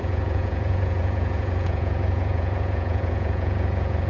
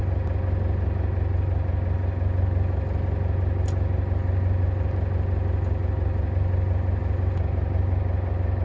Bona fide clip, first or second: second